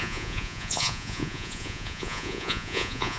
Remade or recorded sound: remade